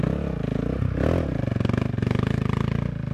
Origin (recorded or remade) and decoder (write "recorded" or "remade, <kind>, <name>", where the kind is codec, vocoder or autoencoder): recorded